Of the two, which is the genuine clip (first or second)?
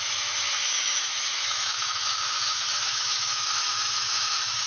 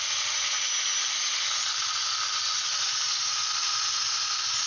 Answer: second